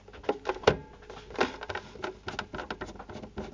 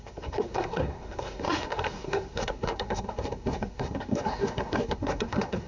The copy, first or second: second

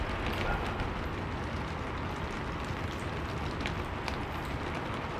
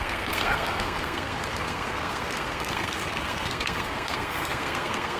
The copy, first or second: second